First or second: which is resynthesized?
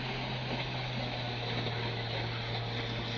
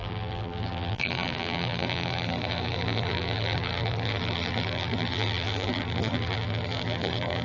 second